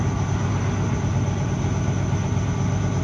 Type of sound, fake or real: real